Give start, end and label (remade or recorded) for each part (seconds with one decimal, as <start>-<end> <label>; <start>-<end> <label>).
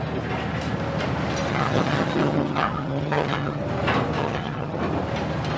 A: 0.0-1.5 recorded; 1.5-3.6 remade; 3.6-4.2 recorded; 4.2-4.8 remade; 4.8-5.6 recorded